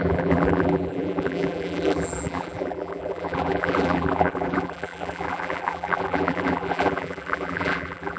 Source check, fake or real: fake